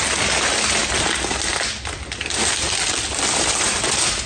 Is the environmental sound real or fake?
real